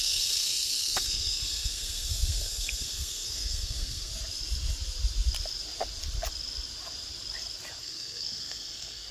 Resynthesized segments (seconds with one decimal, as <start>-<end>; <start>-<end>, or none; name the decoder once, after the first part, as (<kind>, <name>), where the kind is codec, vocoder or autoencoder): 0.0-4.1 (codec, SNAC); 7.8-9.1